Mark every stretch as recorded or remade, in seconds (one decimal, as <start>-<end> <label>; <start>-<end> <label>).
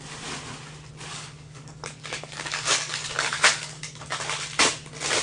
0.0-1.1 recorded; 1.1-4.2 remade; 4.2-5.2 recorded